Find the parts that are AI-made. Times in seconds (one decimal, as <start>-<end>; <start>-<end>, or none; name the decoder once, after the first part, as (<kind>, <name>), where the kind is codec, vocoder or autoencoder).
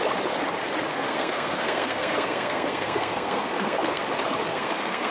0.9-4.0 (codec, SNAC); 4.5-5.1